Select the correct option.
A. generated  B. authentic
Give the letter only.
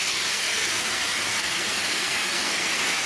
A